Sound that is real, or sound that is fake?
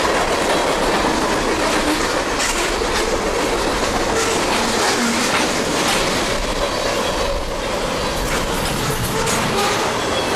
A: real